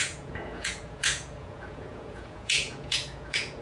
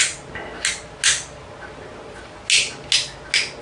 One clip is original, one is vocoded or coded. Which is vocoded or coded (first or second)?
first